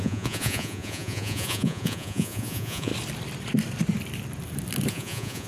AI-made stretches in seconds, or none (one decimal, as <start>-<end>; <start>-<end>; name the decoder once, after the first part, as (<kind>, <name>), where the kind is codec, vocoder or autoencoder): 0.0-2.9 (vocoder, Vocos); 4.9-5.5